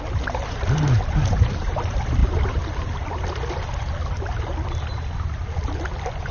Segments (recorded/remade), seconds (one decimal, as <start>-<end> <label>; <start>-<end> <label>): 0.0-2.2 remade; 2.2-6.3 recorded